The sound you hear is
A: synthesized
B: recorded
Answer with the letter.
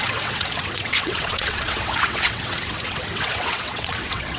A